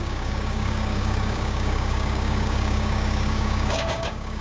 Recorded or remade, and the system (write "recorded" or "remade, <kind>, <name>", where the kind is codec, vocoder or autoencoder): remade, codec, DAC